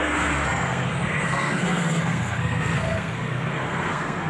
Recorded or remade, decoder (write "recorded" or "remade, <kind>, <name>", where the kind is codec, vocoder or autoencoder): remade, codec, SNAC